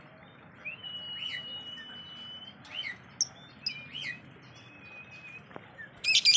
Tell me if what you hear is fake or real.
real